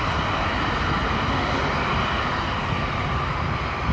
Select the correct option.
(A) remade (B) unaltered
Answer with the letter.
B